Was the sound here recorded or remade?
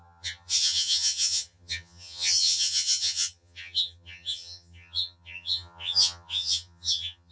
remade